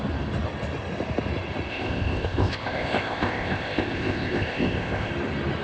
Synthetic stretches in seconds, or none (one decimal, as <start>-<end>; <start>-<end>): 1.7-5.1